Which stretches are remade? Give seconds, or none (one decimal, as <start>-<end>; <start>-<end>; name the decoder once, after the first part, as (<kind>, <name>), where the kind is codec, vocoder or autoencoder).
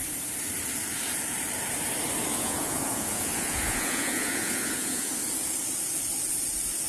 2.3-5.1 (vocoder, Vocos)